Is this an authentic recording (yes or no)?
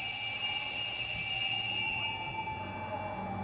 yes